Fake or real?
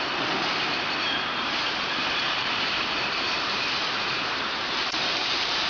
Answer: fake